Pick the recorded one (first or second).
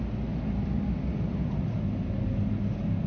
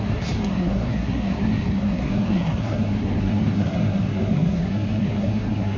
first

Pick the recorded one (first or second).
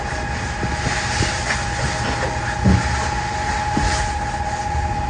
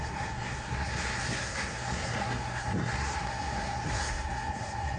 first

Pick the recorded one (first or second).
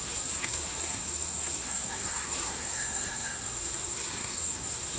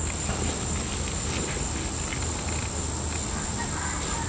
second